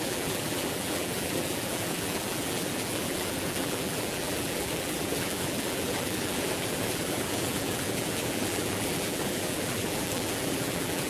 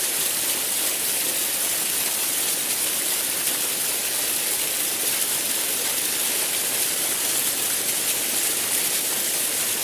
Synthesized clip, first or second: first